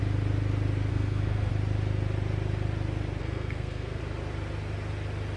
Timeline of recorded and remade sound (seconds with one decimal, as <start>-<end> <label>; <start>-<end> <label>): 0.0-0.9 recorded; 0.9-1.5 remade; 1.5-3.2 recorded; 3.2-4.0 remade; 4.0-5.4 recorded